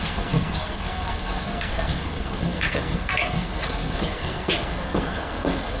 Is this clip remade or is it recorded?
remade